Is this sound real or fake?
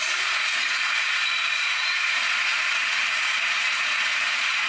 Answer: fake